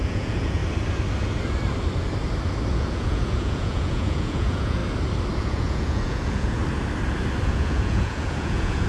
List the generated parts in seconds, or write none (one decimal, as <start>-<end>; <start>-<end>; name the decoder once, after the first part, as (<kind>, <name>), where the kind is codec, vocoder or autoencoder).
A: 0.0-0.6 (vocoder, Vocos); 2.7-4.8; 5.4-6.6; 7.5-8.9